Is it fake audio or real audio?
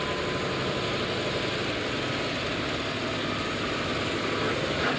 real